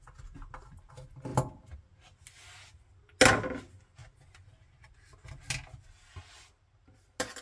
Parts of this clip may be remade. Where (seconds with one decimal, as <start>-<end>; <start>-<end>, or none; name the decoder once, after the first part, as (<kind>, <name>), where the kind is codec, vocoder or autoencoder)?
none